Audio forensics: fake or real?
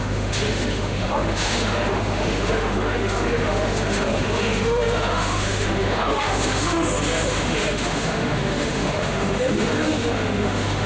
fake